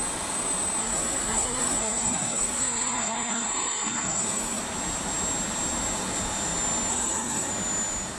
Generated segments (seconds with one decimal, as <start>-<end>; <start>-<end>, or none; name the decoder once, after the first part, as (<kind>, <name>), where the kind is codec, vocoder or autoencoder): 0.8-4.6 (codec, SNAC); 6.9-7.5